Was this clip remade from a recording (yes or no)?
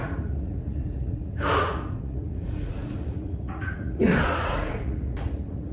yes